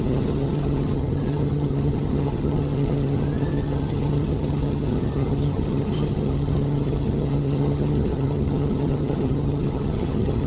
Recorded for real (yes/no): no